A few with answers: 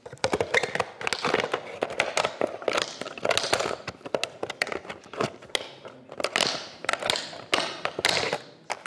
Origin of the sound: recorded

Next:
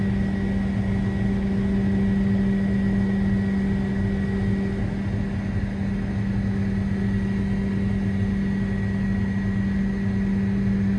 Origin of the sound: recorded